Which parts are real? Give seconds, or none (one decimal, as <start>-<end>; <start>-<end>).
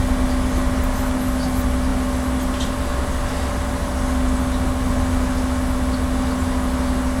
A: 0.0-7.2